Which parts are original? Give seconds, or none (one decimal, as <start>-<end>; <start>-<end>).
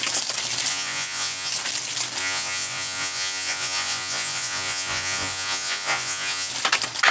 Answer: 0.0-0.7; 1.5-2.2; 6.5-7.1